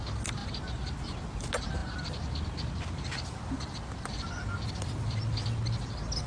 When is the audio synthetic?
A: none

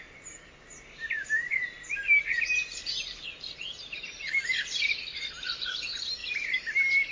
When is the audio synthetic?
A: 0.0-7.1 (vocoder, BigVGAN v2)